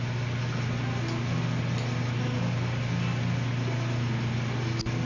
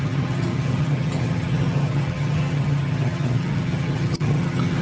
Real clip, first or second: first